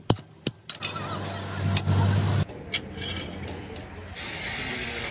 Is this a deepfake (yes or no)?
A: no